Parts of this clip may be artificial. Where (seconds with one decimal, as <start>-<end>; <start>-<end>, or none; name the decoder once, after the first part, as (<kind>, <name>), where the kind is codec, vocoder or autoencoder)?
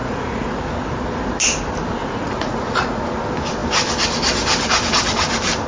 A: 0.0-0.6 (vocoder, Vocos); 2.0-3.0